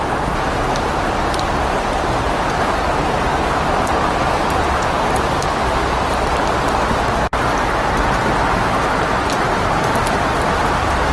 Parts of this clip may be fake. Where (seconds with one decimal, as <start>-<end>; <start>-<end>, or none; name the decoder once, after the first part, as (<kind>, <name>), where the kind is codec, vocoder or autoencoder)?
none